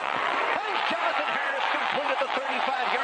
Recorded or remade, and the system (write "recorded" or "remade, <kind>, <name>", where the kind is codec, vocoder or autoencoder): remade, vocoder, WaveNeXt